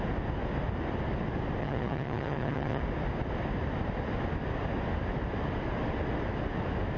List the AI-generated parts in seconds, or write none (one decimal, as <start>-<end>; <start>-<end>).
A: 1.6-2.8